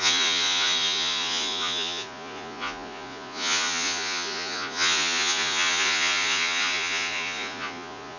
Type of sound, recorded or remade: remade